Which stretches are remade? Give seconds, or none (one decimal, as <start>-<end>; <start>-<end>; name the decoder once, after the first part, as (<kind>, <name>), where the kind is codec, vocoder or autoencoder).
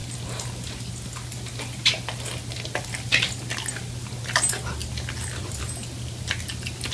none